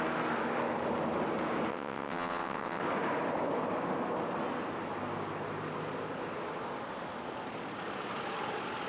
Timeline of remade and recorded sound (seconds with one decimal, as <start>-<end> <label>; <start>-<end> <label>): 0.0-1.7 recorded; 1.7-2.8 remade; 2.8-8.9 recorded